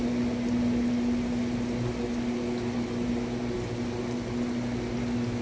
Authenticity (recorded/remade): recorded